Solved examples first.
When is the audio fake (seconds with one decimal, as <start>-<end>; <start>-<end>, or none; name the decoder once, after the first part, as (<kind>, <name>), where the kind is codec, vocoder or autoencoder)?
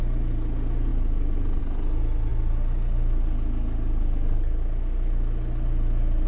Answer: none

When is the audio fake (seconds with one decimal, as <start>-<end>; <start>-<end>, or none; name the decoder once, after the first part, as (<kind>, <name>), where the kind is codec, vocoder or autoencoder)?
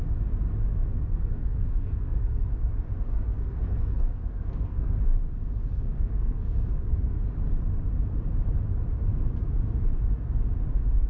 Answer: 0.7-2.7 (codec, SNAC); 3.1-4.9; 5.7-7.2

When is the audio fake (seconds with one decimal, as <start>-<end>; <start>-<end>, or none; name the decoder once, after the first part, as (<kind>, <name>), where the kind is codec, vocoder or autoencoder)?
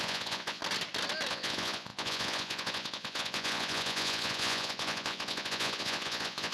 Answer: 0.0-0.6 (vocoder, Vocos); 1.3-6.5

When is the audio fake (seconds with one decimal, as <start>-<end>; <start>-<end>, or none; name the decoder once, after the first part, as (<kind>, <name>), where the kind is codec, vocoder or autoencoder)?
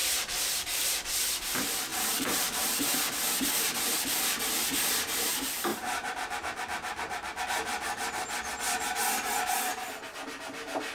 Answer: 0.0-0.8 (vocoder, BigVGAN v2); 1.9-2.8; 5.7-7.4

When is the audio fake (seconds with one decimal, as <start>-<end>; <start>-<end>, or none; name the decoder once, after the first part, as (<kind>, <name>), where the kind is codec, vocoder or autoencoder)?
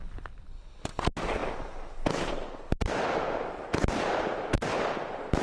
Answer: 2.8-4.6 (vocoder, BigVGAN v2)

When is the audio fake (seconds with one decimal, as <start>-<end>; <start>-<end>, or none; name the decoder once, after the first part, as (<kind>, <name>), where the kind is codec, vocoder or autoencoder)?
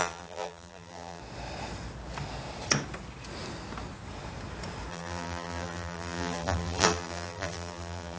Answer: 0.0-1.2 (vocoder, BigVGAN v2); 4.9-8.2